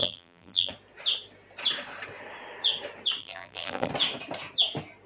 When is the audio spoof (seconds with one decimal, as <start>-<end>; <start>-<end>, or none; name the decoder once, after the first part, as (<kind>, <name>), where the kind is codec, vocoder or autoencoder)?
0.0-0.7 (vocoder, BigVGAN v2); 3.2-3.9